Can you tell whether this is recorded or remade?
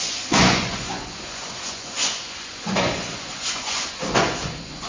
remade